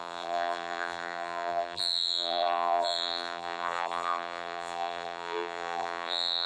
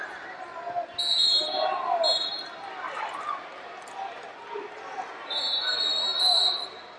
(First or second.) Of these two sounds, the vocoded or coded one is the first